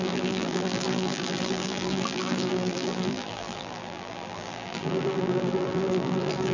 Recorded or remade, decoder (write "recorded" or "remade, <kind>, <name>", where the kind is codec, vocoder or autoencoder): remade, vocoder, BigVGAN v2